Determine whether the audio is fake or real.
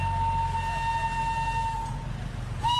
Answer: real